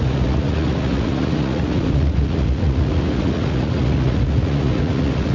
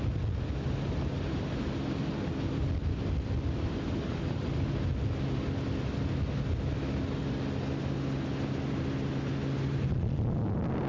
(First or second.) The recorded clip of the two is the second